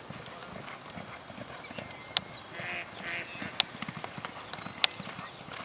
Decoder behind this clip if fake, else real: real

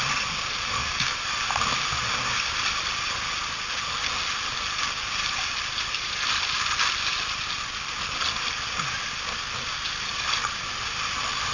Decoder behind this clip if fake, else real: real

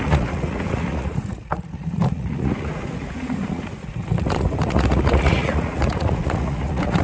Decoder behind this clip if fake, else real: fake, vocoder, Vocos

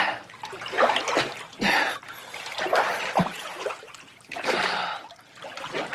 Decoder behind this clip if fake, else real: fake, vocoder, BigVGAN v2